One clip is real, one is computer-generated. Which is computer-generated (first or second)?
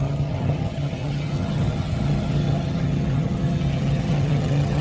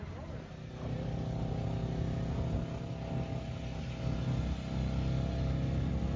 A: first